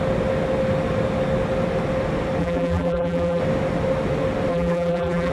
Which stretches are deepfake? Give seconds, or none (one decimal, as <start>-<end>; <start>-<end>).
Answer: 2.4-3.4; 4.5-5.3